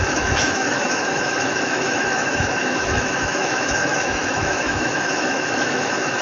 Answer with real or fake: fake